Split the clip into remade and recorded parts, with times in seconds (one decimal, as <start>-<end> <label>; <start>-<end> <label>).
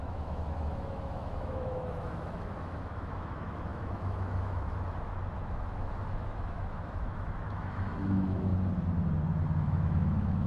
0.0-8.5 remade; 8.5-9.6 recorded; 9.6-10.5 remade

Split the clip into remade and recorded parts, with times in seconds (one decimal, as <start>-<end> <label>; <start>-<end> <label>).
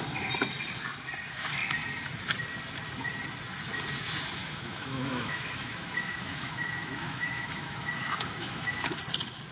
0.0-4.4 recorded; 4.4-9.0 remade; 9.0-9.5 recorded